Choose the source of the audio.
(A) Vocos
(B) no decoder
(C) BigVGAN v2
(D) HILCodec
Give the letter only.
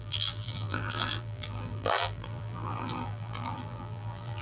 C